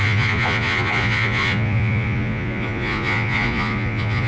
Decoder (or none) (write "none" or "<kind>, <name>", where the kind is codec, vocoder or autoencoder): vocoder, Vocos